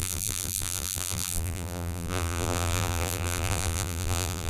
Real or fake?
fake